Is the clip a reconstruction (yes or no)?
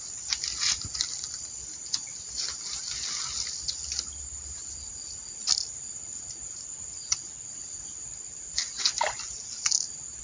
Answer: no